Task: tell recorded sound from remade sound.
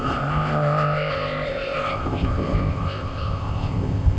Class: remade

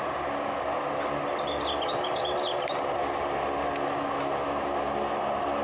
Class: recorded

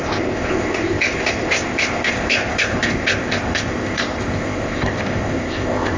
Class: remade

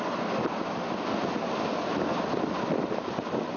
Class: recorded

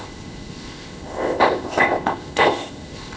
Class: remade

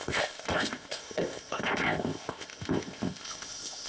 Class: remade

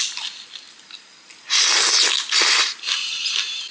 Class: recorded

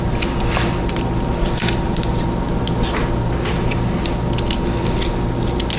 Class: recorded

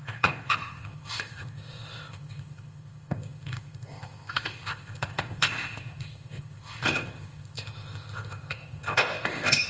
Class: remade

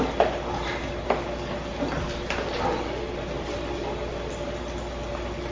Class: recorded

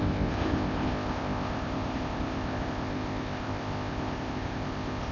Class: remade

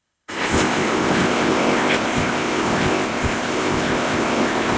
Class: remade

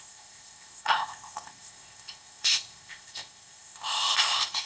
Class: remade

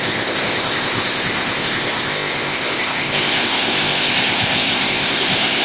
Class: remade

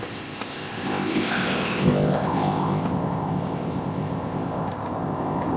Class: remade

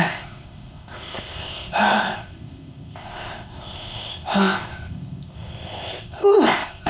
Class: remade